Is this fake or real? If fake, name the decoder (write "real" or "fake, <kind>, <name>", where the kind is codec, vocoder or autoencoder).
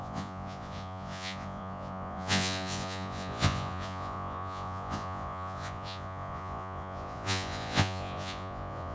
fake, vocoder, Vocos